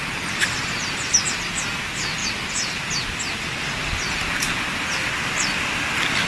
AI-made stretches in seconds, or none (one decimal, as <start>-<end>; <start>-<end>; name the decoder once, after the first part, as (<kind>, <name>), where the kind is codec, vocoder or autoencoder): none